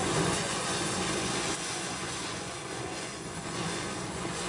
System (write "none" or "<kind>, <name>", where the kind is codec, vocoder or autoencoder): vocoder, Vocos